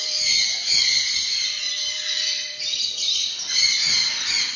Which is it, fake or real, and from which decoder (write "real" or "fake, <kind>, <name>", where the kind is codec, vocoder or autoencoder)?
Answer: fake, vocoder, BigVGAN v2